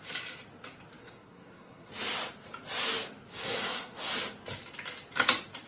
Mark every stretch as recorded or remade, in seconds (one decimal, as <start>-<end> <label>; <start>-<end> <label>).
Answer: 0.0-1.0 recorded; 1.0-1.9 remade; 1.9-3.3 recorded; 3.3-4.1 remade; 4.1-5.7 recorded